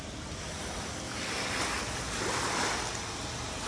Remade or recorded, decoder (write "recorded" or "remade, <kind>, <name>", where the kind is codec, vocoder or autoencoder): recorded